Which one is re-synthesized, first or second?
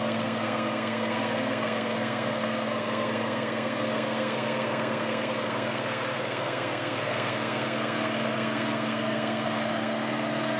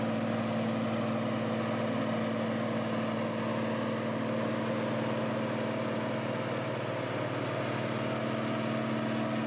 first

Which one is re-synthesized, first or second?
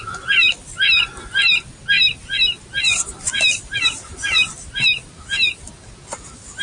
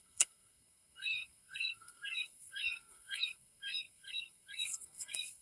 second